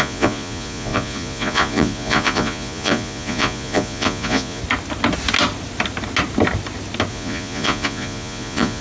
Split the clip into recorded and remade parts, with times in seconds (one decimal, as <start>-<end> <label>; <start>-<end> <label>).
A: 0.0-4.6 remade; 4.6-7.1 recorded; 7.1-8.8 remade